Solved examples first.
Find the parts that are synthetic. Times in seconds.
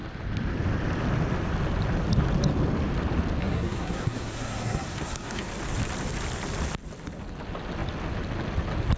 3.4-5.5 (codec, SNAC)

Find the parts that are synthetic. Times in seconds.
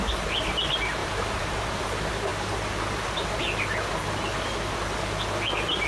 1.0-1.8 (vocoder, BigVGAN v2)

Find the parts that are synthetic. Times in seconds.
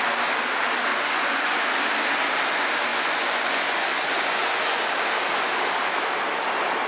0.9-1.6 (vocoder, Vocos); 2.9-4.8